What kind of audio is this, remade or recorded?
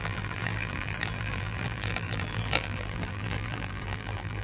remade